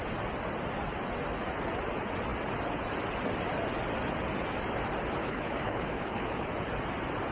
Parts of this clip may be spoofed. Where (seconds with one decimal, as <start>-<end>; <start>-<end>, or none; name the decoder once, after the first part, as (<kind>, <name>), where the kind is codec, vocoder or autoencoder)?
5.2-6.5 (codec, HILCodec)

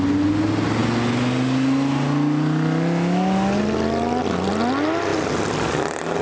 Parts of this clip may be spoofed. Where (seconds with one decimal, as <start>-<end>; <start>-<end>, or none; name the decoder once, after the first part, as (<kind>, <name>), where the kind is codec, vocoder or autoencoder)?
none

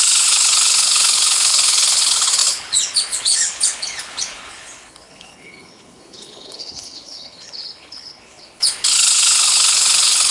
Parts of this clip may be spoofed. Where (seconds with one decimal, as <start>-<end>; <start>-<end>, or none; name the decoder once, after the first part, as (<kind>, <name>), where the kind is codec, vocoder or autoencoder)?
0.0-10.3 (codec, HILCodec)

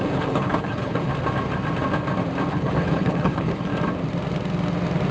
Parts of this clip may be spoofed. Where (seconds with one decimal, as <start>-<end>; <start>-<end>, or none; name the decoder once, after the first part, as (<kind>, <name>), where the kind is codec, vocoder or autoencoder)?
0.0-1.1 (codec, HILCodec); 2.5-3.7

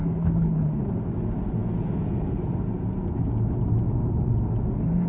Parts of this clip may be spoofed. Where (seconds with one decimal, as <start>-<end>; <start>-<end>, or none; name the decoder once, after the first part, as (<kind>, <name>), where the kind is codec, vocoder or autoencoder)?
0.0-0.8 (codec, HILCodec)